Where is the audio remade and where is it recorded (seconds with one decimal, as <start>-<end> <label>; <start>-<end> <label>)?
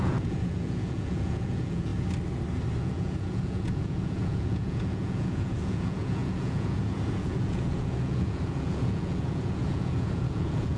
0.0-1.9 remade; 1.9-2.8 recorded; 2.8-10.8 remade